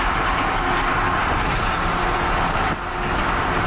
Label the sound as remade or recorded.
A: recorded